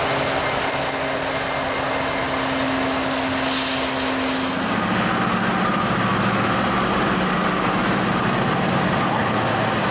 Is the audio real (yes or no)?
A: yes